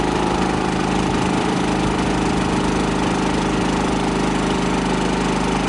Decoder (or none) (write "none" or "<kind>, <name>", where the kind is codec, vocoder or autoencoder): none